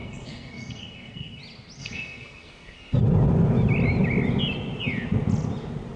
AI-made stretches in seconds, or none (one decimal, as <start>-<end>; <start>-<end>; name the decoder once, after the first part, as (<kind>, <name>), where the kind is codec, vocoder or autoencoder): 0.0-1.4 (codec, SNAC); 1.8-3.0